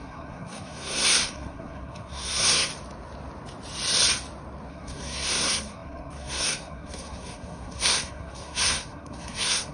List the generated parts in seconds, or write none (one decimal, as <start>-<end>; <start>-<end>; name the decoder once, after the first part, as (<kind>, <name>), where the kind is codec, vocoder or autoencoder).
0.0-2.7 (codec, SNAC); 4.7-9.7